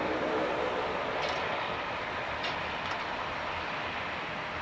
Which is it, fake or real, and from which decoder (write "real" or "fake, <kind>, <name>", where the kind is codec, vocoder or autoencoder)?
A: real